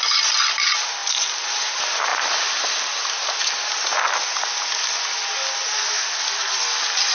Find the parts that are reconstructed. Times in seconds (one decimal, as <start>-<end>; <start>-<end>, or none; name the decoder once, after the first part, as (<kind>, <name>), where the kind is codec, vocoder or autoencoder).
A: none